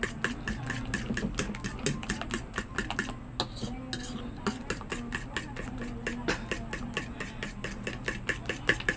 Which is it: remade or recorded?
recorded